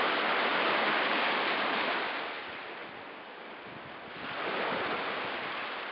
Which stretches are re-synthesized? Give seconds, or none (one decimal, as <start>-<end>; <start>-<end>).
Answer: 0.5-1.9